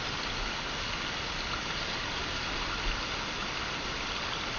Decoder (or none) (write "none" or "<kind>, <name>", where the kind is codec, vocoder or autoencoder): none